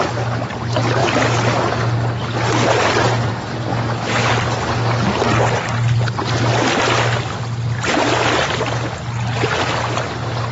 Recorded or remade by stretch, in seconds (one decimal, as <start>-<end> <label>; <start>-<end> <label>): 0.0-3.7 recorded; 3.7-4.3 remade; 4.3-10.5 recorded